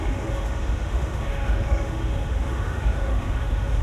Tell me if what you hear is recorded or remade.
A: remade